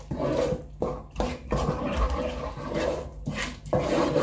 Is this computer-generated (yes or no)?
no